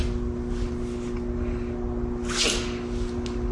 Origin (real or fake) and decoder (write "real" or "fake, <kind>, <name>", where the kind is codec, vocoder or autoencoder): real